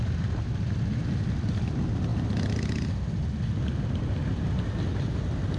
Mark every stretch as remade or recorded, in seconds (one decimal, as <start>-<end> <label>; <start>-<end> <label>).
0.0-5.6 recorded